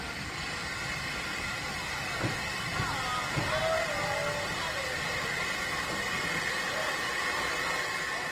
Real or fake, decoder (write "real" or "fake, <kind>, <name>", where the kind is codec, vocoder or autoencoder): real